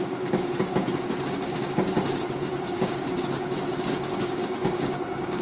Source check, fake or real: fake